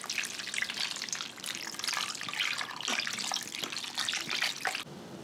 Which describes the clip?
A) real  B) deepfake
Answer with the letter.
A